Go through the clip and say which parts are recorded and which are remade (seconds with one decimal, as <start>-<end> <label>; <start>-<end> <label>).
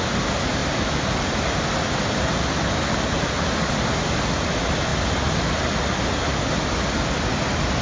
0.0-7.8 recorded